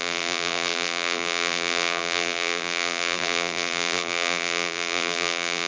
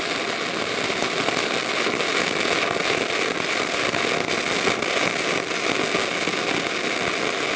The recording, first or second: second